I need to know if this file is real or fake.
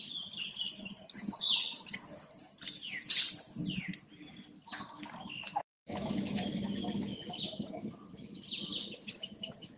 real